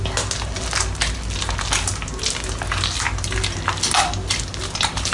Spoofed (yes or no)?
no